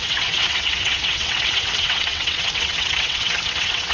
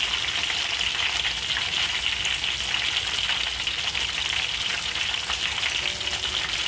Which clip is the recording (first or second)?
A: second